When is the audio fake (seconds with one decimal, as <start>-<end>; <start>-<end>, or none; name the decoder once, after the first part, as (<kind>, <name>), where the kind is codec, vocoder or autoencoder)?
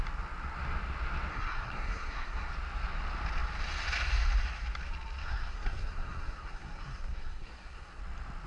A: 1.3-2.5 (codec, SNAC); 5.2-8.0